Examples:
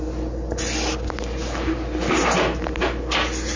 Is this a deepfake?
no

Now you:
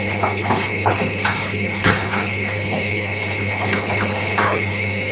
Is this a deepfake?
yes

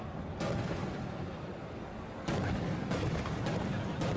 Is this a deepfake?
no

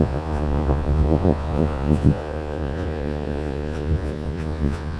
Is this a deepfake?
yes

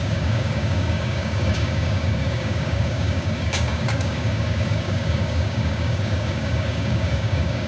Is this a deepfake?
yes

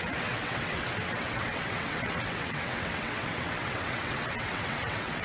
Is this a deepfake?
yes